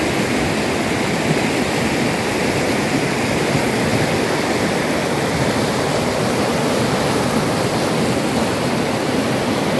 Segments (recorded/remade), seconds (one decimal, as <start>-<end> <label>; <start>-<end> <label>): 0.0-9.8 recorded